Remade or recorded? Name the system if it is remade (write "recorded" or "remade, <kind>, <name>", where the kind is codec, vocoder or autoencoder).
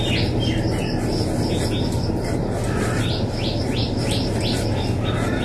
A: recorded